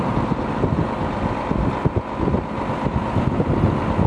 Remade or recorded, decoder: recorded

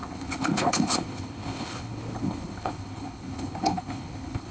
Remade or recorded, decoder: remade, codec, HILCodec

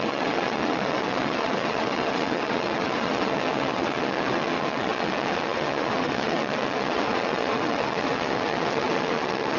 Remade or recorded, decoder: remade, vocoder, WaveNeXt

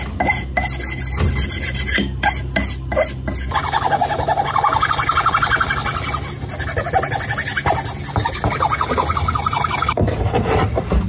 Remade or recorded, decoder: recorded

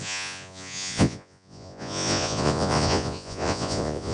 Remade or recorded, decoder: remade, vocoder, Vocos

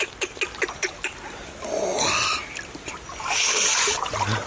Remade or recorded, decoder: recorded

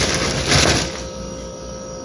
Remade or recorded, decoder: recorded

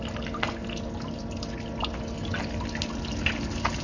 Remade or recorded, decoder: recorded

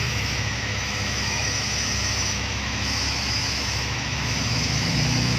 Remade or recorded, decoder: remade, autoencoder, DAC-VAE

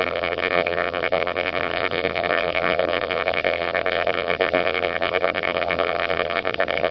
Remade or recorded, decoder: remade, vocoder, BigVGAN v2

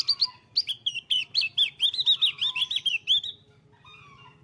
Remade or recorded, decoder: recorded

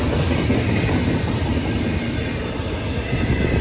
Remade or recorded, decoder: recorded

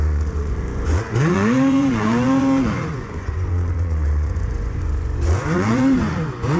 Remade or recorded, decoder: remade, vocoder, Vocos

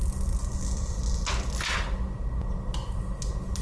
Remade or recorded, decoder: recorded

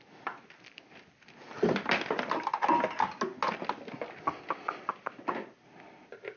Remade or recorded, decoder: recorded